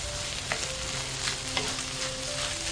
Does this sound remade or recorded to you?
recorded